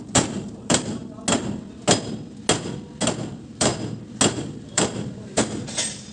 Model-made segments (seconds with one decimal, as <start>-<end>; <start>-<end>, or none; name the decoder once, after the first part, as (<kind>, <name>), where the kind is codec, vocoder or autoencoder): 0.0-1.0 (vocoder, BigVGAN v2); 3.3-3.7; 4.3-6.1